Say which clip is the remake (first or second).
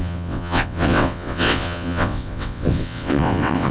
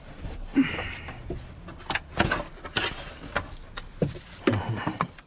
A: first